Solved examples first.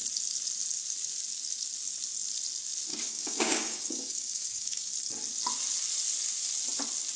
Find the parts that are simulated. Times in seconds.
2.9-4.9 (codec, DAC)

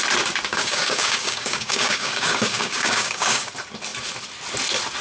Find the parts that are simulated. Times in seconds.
0.5-3.5 (codec, DAC)

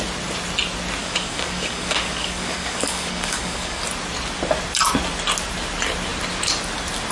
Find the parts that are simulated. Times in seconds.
1.0-3.8 (codec, DAC)

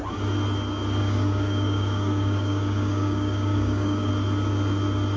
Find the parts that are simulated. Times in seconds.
1.0-4.1 (codec, DAC)

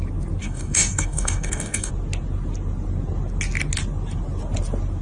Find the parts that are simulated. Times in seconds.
0.4-1.9 (codec, DAC)

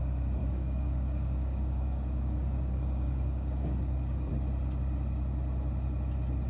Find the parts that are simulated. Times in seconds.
0.4-4.3 (codec, DAC)

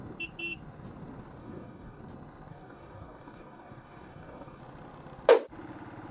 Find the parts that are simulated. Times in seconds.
1.4-2.0 (codec, DAC); 2.5-4.6

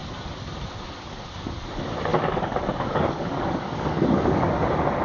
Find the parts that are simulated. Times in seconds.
2.1-4.5 (codec, DAC)